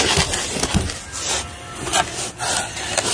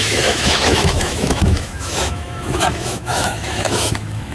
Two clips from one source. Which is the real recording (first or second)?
first